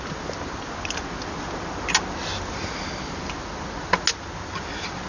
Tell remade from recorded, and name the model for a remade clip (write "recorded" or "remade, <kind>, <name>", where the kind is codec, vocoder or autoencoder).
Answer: recorded